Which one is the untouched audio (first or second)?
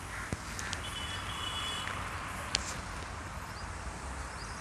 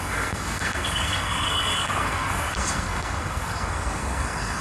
first